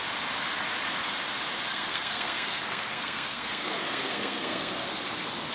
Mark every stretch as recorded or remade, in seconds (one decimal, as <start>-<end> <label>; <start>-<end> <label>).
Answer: 0.0-1.7 recorded; 1.7-5.0 remade; 5.0-5.5 recorded